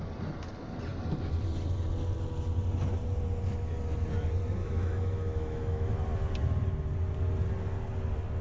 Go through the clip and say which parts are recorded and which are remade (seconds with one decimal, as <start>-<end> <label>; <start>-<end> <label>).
0.0-4.6 recorded; 4.6-5.9 remade; 5.9-8.4 recorded